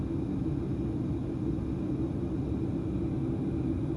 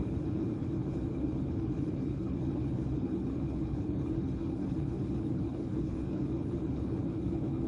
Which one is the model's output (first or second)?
second